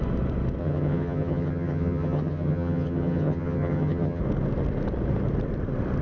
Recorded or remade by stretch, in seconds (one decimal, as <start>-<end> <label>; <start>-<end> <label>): 0.0-0.6 recorded; 0.6-4.2 remade; 4.2-6.0 recorded